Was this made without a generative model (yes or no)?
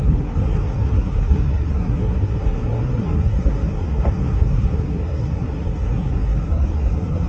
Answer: no